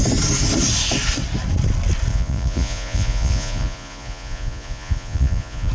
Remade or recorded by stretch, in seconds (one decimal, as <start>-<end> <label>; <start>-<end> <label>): 0.0-2.1 recorded; 2.1-5.7 remade